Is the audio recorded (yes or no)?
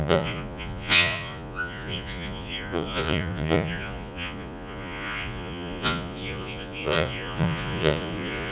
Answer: no